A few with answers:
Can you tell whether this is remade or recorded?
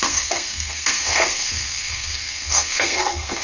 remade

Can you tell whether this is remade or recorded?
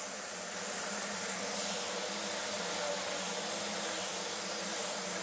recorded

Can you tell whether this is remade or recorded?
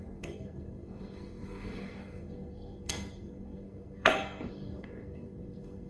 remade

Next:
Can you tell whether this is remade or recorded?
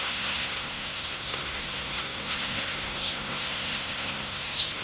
remade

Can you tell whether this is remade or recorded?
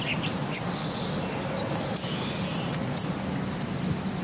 recorded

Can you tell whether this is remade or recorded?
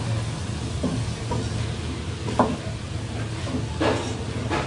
recorded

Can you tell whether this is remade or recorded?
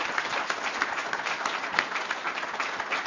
recorded